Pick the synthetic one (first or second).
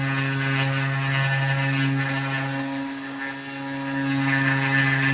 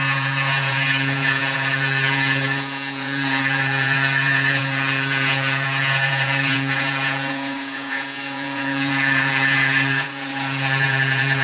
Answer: second